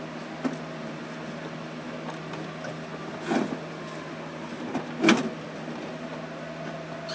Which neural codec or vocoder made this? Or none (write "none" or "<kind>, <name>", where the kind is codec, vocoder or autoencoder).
none